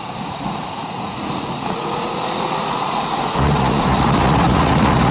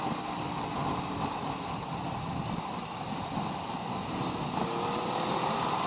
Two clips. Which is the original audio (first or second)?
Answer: second